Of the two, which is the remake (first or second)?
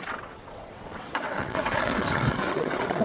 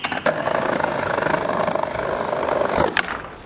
first